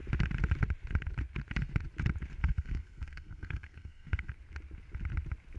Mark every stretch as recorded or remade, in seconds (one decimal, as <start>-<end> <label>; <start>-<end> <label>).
0.0-2.4 recorded; 2.4-4.3 remade; 4.3-5.6 recorded